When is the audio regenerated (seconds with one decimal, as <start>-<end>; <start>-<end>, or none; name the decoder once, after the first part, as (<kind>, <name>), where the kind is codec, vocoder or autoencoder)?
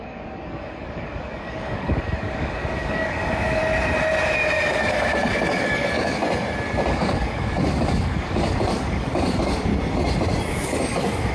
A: 0.0-3.6 (codec, DAC); 4.7-6.2; 6.9-9.7; 10.5-11.3